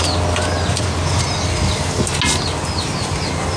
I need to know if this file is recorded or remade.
recorded